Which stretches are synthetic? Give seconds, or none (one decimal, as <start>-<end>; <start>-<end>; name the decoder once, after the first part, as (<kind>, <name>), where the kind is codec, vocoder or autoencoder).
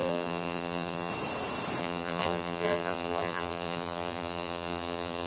0.0-1.1 (vocoder, BigVGAN v2); 1.8-5.3